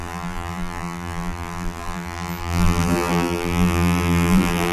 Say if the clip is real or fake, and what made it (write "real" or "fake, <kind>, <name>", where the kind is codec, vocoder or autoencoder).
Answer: fake, vocoder, BigVGAN v2